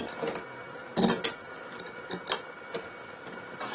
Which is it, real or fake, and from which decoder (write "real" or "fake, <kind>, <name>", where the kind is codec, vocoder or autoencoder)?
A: real